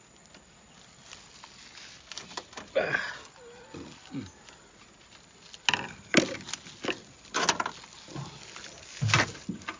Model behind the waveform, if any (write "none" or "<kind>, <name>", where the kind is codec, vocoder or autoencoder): none